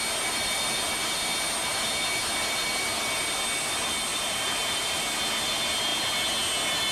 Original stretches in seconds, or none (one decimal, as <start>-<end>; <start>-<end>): 0.0-4.1; 5.0-6.9